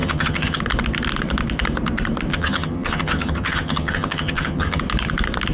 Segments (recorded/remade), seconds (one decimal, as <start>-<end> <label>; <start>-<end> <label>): 0.0-0.6 remade; 0.6-2.3 recorded; 2.3-4.8 remade; 4.8-5.5 recorded

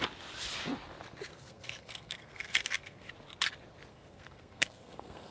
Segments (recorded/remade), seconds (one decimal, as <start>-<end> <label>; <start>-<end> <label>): 0.0-1.3 recorded; 1.3-3.1 remade; 3.1-3.9 recorded; 3.9-5.3 remade

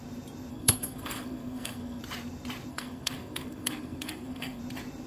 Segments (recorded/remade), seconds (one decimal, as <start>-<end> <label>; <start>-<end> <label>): 0.0-0.5 recorded; 0.5-2.0 remade; 2.0-2.7 recorded; 2.7-4.6 remade; 4.6-5.1 recorded

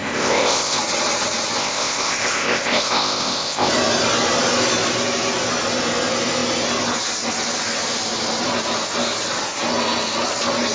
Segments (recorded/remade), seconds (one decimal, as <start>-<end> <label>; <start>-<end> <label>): 0.0-0.8 remade; 0.8-1.6 recorded; 1.6-3.7 remade; 3.7-10.7 recorded

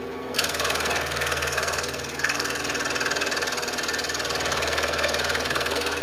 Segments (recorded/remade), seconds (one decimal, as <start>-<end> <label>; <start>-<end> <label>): 0.0-2.6 remade; 2.6-4.5 recorded; 4.5-6.0 remade

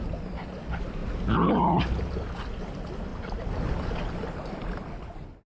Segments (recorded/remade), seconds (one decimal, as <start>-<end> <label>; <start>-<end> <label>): 0.0-5.5 recorded